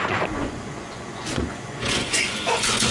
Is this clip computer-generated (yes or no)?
yes